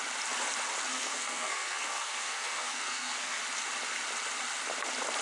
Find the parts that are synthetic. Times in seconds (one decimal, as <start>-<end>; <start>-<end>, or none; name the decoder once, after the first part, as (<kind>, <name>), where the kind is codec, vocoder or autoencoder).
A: 0.9-3.4 (codec, SNAC)